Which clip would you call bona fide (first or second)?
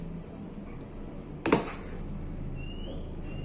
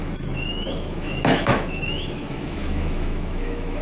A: first